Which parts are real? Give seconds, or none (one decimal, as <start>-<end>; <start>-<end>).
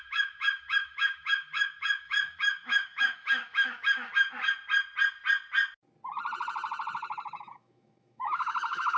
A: 4.1-7.4